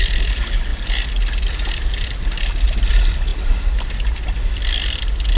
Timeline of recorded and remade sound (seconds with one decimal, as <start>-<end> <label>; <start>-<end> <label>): 0.0-5.4 recorded